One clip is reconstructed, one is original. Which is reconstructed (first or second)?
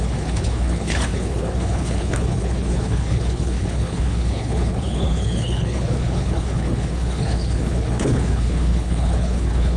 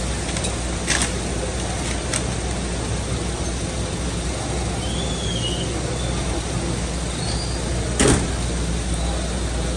first